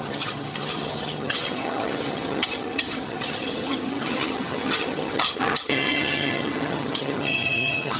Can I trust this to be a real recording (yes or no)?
no